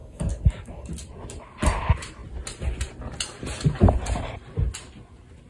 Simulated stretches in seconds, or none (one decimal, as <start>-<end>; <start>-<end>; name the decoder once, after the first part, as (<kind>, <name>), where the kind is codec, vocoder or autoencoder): 0.0-0.9 (codec, DAC)